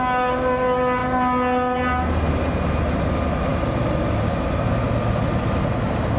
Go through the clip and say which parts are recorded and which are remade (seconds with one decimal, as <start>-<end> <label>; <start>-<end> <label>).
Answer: 0.0-6.2 recorded